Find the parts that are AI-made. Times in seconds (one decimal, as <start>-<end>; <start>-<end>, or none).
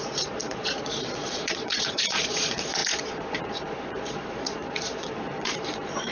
0.0-6.1